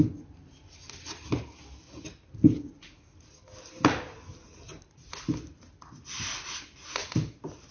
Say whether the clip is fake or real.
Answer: real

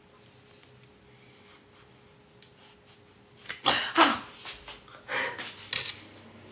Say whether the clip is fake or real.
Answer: real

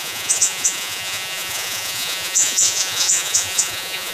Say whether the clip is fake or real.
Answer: fake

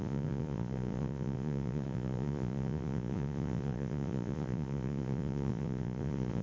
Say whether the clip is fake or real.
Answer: fake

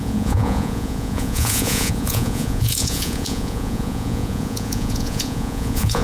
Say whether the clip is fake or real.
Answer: fake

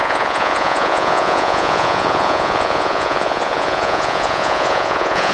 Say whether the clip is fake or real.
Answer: fake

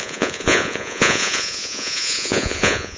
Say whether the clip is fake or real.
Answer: fake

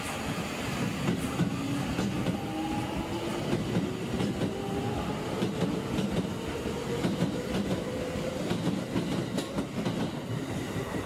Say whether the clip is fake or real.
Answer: real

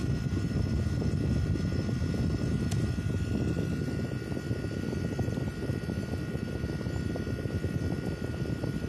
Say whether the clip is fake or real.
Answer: real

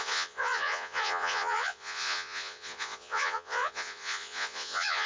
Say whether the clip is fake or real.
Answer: fake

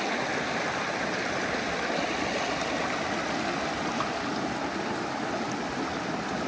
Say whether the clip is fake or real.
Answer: real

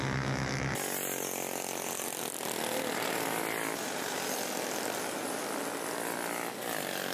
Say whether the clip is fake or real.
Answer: real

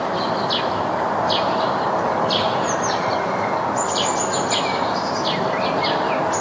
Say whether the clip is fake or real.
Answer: real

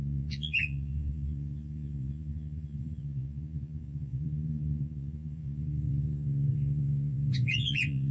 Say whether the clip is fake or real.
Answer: fake